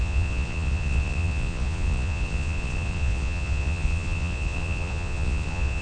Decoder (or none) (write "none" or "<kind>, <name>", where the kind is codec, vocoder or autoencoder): vocoder, Vocos